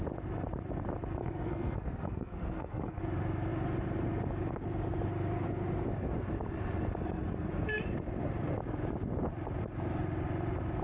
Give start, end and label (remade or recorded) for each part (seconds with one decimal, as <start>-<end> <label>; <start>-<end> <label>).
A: 0.0-1.2 recorded; 1.2-3.0 remade; 3.0-10.8 recorded